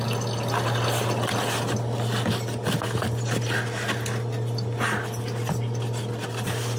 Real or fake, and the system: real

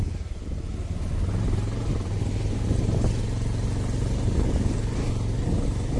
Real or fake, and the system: real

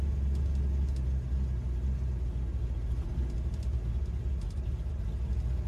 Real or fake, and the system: real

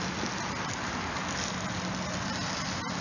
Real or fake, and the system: real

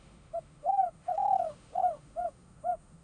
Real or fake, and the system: fake, autoencoder, DAC-VAE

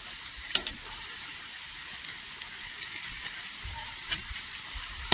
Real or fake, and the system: real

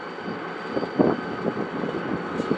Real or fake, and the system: real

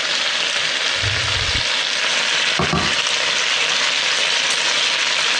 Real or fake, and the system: real